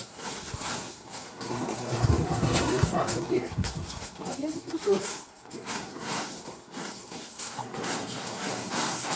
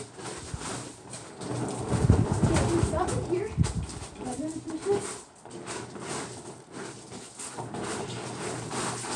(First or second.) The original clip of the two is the second